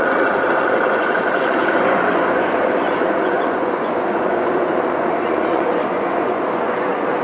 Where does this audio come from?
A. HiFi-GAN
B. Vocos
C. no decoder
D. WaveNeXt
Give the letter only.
B